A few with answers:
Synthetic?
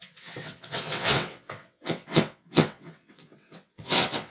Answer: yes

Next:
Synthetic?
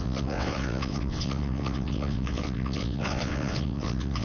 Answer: yes